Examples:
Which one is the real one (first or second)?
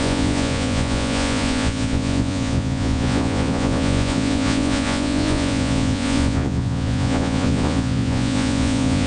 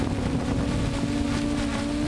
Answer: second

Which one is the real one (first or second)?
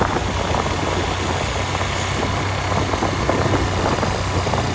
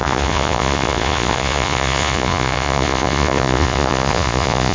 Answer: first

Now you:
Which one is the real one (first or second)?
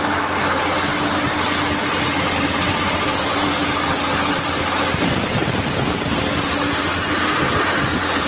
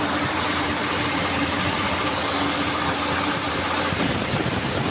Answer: first